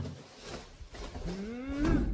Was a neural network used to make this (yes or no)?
no